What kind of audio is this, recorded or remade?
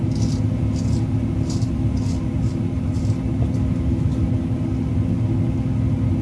recorded